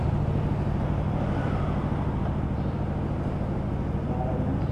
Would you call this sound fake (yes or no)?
no